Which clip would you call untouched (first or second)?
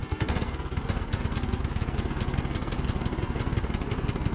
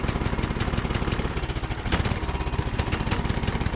second